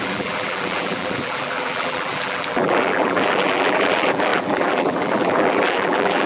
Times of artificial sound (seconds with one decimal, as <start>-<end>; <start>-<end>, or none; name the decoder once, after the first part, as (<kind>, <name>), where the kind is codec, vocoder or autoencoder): 0.0-6.3 (vocoder, BigVGAN v2)